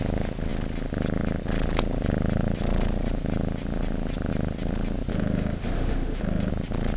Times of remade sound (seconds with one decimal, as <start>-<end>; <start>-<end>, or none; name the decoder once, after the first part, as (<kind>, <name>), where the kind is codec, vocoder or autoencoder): 5.1-6.5 (autoencoder, DAC-VAE)

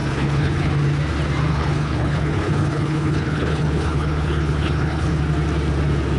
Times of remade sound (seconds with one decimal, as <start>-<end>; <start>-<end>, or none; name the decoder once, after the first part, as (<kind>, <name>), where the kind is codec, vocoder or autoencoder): 0.0-0.7 (codec, HILCodec); 1.5-5.2

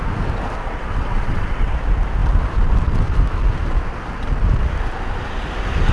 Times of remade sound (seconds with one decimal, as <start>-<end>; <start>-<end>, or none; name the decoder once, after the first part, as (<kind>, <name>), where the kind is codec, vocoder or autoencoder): 0.6-1.7 (vocoder, WaveNeXt)

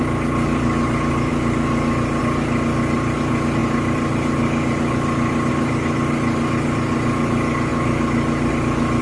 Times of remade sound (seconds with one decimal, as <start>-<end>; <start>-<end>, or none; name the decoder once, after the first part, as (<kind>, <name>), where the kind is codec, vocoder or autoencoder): none

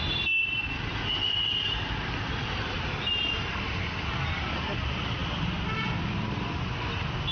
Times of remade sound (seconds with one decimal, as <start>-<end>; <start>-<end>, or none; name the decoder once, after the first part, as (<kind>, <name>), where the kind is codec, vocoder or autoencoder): none

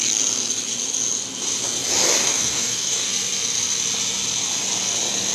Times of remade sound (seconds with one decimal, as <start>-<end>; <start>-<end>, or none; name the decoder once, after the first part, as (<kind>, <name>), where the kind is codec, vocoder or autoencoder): 2.2-3.1 (codec, DAC)

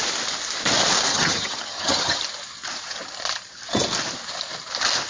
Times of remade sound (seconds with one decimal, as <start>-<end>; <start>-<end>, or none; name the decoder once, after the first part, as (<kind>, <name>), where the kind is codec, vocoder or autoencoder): 1.1-2.2 (vocoder, HiFi-GAN)

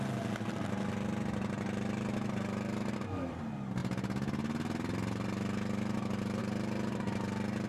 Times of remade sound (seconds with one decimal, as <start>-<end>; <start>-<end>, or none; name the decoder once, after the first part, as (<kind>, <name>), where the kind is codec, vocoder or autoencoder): none